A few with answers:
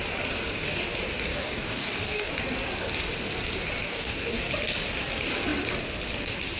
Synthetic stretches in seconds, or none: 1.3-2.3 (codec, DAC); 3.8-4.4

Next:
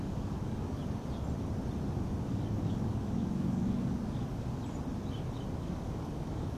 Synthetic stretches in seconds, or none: 0.0-0.8 (codec, DAC); 2.2-4.6; 5.5-6.6

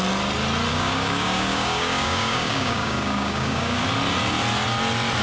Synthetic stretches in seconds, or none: 0.7-3.8 (codec, DAC)

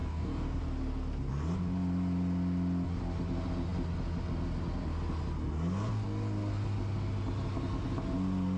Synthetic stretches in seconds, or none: 0.0-0.6 (codec, DAC)